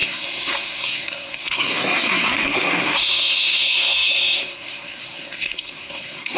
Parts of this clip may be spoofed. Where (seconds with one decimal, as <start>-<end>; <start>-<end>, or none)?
0.0-6.4